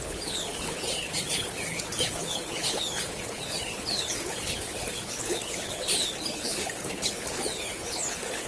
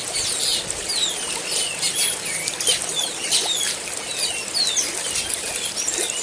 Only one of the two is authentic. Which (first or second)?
second